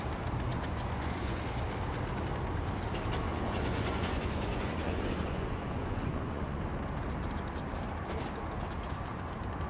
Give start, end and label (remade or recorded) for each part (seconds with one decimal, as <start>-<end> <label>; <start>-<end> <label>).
0.0-0.5 recorded; 0.5-1.4 remade; 1.4-3.3 recorded; 3.3-6.6 remade; 6.6-9.7 recorded